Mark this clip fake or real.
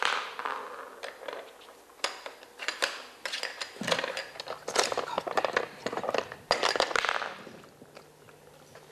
real